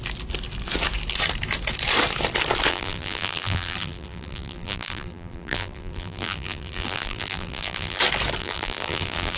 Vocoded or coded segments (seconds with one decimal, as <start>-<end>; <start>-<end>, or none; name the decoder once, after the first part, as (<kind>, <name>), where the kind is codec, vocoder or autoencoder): 2.7-8.0 (vocoder, BigVGAN v2); 8.4-9.4